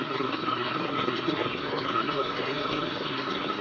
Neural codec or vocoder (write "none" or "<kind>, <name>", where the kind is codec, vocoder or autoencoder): codec, SNAC